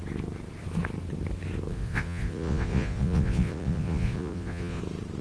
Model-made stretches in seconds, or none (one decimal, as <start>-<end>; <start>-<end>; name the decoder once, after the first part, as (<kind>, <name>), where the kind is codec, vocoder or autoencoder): 1.7-4.8 (vocoder, Vocos)